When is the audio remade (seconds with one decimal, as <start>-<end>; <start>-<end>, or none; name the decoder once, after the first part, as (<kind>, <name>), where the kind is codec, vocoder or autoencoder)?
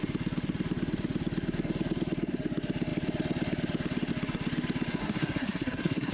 5.0-6.1 (codec, SNAC)